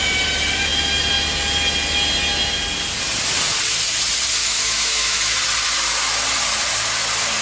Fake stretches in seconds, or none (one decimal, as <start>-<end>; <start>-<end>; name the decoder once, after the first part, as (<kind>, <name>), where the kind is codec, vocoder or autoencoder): 4.4-5.2 (autoencoder, DAC-VAE)